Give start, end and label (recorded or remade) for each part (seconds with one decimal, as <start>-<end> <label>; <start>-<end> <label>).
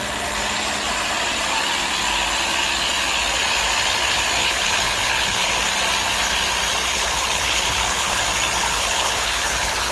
0.0-4.4 recorded; 4.4-5.5 remade; 5.5-6.9 recorded; 6.9-8.2 remade; 8.2-8.6 recorded; 8.6-9.9 remade